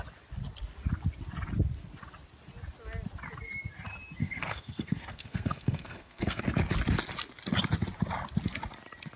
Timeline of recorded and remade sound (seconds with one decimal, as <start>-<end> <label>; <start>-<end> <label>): 0.0-4.2 recorded; 4.2-6.4 remade; 6.4-9.2 recorded